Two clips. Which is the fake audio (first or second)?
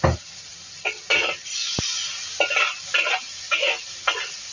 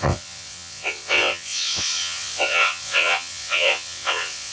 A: second